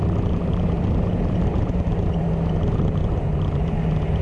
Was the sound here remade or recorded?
recorded